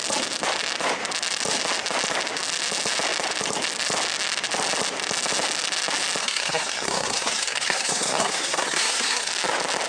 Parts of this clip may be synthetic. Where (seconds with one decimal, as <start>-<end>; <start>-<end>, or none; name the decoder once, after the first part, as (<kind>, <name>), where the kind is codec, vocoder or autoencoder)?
6.2-9.3 (codec, SNAC)